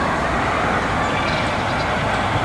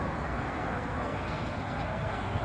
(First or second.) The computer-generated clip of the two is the second